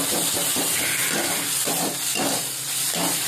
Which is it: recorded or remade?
recorded